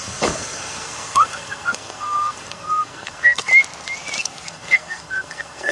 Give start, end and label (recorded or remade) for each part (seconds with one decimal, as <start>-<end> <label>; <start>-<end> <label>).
0.0-3.5 remade; 3.5-4.2 recorded; 4.2-5.7 remade